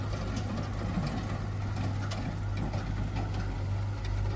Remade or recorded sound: recorded